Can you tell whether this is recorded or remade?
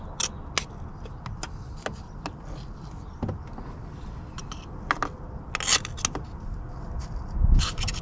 recorded